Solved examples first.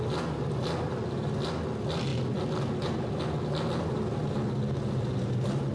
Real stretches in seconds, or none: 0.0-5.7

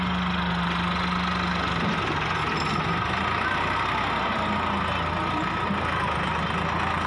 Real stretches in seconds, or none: 0.0-7.1